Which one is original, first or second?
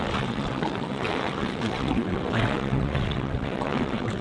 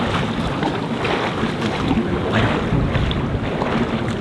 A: second